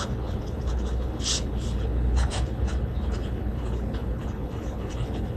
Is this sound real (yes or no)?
no